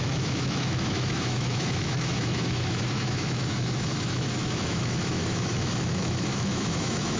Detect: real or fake fake